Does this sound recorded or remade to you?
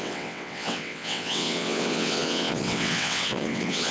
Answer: remade